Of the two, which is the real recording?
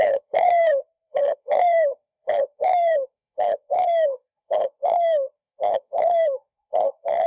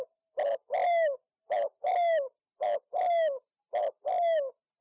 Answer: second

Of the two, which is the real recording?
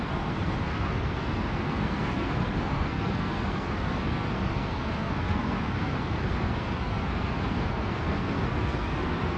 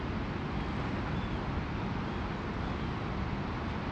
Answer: second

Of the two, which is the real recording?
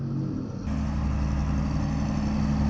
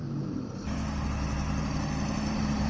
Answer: first